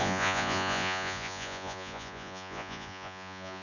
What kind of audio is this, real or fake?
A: fake